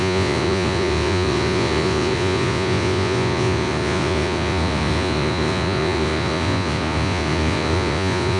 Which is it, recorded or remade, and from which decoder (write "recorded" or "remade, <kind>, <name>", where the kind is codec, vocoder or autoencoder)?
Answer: remade, vocoder, Vocos